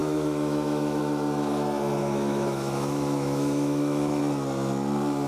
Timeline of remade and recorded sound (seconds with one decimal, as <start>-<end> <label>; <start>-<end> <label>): 0.0-1.0 remade; 1.0-2.0 recorded; 2.0-4.2 remade; 4.2-5.3 recorded